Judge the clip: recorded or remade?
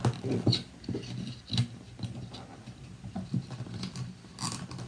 recorded